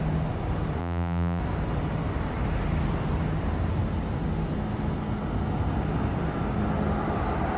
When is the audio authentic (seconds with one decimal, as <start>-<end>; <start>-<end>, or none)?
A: 0.0-0.8; 1.4-7.6